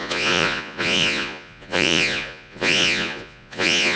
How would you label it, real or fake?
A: fake